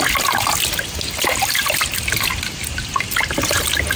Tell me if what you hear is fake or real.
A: real